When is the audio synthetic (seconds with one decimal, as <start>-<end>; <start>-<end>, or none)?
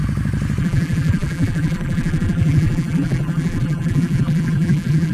0.6-5.1